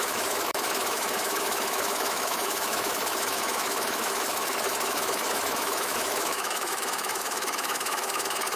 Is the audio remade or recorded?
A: remade